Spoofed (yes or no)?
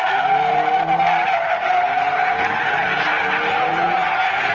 no